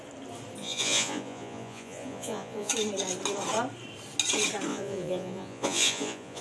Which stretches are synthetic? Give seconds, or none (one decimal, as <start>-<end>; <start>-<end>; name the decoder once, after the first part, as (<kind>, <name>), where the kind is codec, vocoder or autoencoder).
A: 0.6-2.7 (vocoder, Vocos); 4.7-6.4